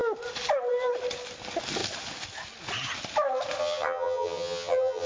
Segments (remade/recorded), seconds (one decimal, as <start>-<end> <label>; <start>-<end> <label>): 0.0-3.6 recorded; 3.6-5.1 remade